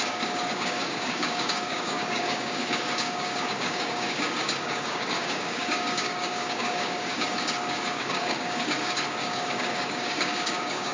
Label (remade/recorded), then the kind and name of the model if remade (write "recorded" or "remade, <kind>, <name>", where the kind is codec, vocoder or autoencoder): remade, codec, DAC